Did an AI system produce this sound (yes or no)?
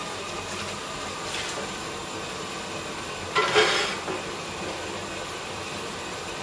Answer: no